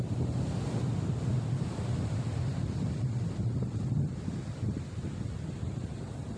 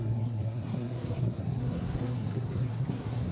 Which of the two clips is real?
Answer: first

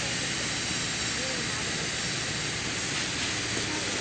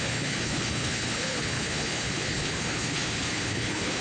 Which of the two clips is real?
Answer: first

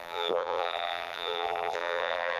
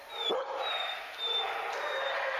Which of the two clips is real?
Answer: second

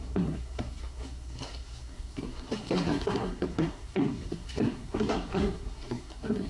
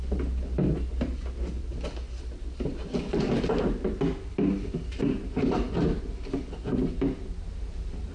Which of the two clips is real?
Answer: second